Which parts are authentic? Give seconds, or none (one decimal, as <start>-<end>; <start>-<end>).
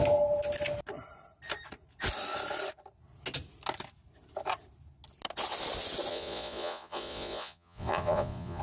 0.0-6.1